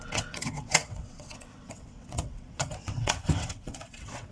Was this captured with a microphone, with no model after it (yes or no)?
no